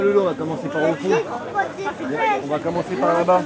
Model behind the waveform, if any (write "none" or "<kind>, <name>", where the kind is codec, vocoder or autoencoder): none